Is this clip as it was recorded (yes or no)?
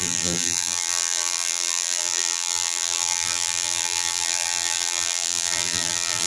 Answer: no